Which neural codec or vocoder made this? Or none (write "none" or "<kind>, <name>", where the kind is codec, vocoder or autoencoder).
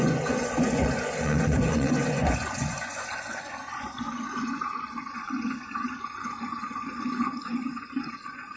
vocoder, Vocos